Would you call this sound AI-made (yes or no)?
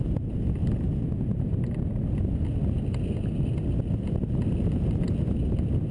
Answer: no